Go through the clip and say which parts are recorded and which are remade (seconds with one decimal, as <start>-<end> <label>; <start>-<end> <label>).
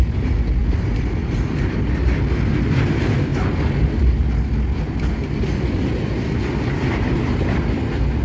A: 0.0-8.2 recorded